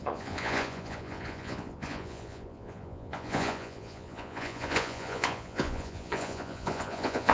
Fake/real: fake